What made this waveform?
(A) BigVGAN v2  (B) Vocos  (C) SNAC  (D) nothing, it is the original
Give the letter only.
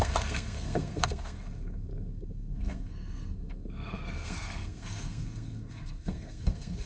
C